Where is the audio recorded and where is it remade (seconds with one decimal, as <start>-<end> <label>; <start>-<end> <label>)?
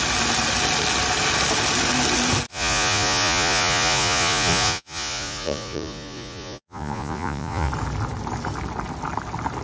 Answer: 0.0-2.5 recorded; 2.5-7.7 remade; 7.7-9.6 recorded